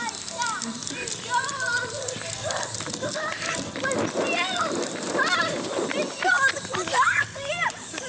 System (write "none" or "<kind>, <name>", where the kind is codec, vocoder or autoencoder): none